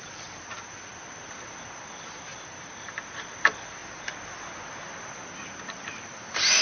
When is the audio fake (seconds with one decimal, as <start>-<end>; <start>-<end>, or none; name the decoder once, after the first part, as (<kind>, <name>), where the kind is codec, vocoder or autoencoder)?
0.0-3.8 (vocoder, BigVGAN v2); 4.9-6.6